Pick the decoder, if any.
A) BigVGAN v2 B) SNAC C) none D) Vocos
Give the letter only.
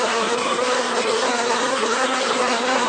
B